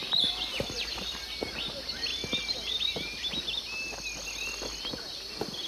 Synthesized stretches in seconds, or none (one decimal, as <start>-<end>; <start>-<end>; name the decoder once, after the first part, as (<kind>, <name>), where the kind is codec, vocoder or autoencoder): none